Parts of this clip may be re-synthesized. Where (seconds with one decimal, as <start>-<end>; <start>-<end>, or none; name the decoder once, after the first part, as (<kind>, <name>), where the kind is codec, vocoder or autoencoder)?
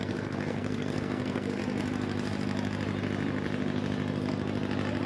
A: 0.0-1.6 (codec, SNAC)